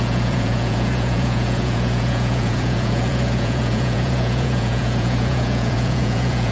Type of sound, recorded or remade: remade